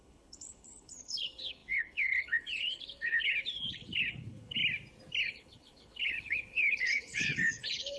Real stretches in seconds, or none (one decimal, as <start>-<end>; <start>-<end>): 4.6-5.2